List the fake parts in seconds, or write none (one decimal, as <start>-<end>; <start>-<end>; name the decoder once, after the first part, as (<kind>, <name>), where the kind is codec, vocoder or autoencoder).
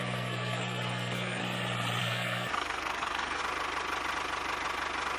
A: 0.0-1.4 (codec, SNAC); 2.0-3.4